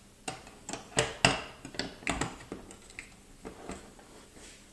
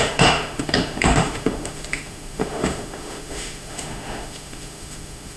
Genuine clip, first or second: first